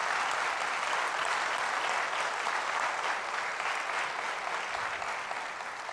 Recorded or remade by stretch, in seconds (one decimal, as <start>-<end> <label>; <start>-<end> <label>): 0.0-5.9 recorded